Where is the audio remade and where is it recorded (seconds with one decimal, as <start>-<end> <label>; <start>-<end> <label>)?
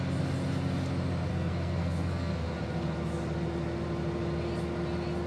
0.0-1.3 recorded; 1.3-2.5 remade; 2.5-5.3 recorded